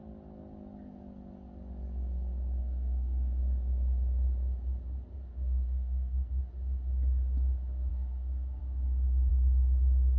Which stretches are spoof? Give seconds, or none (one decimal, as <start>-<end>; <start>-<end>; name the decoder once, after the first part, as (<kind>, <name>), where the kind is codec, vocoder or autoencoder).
2.6-3.4 (codec, SNAC); 5.3-6.4; 7.9-8.6